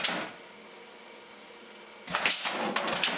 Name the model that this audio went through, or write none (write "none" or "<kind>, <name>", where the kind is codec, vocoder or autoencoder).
none